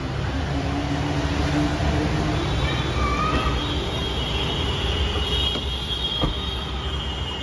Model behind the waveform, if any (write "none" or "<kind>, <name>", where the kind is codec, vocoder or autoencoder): none